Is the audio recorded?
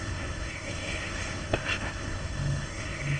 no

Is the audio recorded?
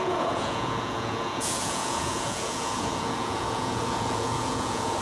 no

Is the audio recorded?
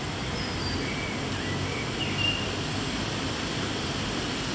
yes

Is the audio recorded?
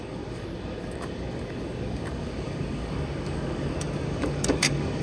no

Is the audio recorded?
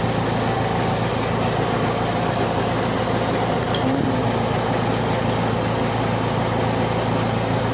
yes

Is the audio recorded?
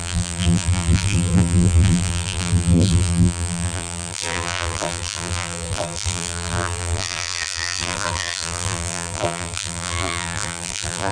no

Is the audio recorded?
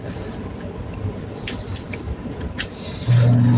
yes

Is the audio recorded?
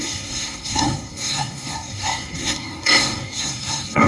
no